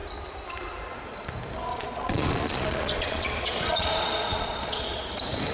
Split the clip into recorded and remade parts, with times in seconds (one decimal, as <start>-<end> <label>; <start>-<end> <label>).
0.0-1.7 recorded; 1.7-5.0 remade; 5.0-5.5 recorded